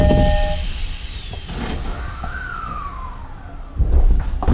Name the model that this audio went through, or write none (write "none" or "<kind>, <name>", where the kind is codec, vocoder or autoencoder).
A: none